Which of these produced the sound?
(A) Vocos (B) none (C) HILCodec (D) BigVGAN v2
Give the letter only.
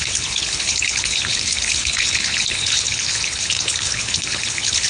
C